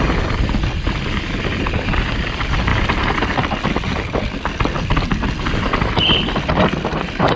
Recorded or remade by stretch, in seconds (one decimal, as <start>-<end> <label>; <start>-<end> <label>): 0.0-7.4 recorded